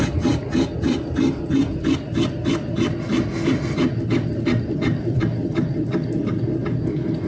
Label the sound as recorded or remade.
recorded